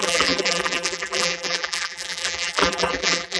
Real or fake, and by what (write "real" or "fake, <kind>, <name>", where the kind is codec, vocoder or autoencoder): fake, vocoder, BigVGAN v2